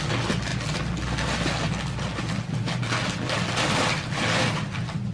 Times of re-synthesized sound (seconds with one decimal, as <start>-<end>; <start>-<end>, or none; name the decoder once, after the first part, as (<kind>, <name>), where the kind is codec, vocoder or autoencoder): none